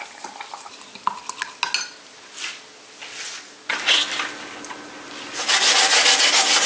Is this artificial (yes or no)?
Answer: no